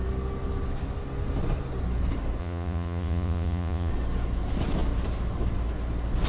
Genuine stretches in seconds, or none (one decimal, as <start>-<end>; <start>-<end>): 0.0-2.4; 3.9-6.3